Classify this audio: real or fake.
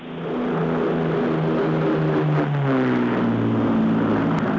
real